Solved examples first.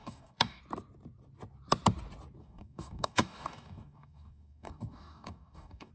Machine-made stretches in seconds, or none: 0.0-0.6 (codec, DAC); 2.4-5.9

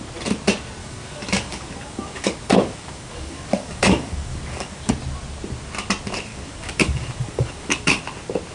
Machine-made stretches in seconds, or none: 0.8-4.9 (codec, DAC); 6.3-8.0

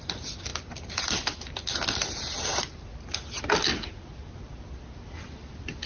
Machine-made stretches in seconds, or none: none

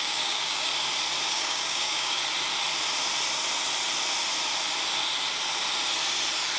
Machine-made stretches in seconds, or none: 0.0-0.7 (codec, DAC); 1.3-2.2

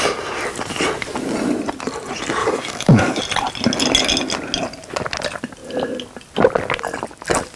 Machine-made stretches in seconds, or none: 2.4-3.2 (codec, DAC)

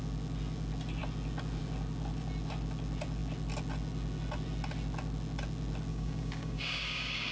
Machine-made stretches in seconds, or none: 5.9-7.3 (codec, DAC)

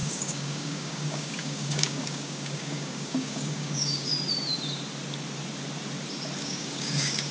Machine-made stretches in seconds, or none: 0.0-4.1 (codec, DAC); 6.4-7.3

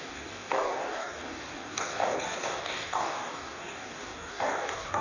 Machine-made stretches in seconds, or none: 0.0-5.0 (codec, DAC)